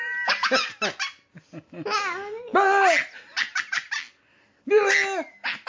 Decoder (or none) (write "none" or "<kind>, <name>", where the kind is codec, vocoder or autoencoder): none